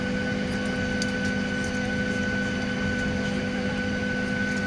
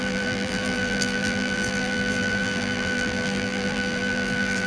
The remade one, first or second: second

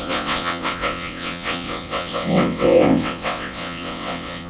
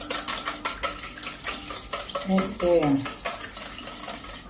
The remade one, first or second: first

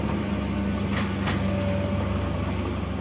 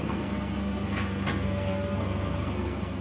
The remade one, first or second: second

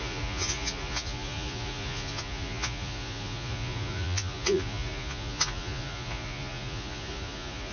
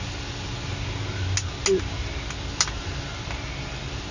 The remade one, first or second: first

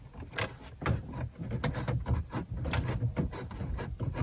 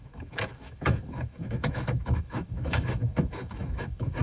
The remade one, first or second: second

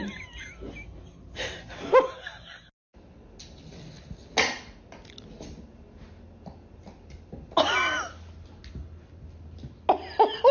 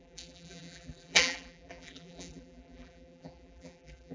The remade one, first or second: second